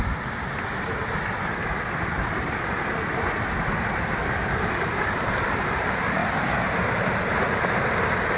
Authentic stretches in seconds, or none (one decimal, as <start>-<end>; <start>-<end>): 6.2-7.5